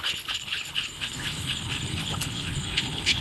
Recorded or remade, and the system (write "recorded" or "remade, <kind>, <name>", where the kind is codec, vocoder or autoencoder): remade, codec, HILCodec